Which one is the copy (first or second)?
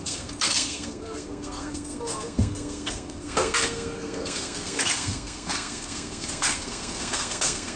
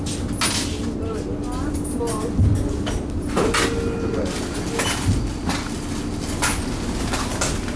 first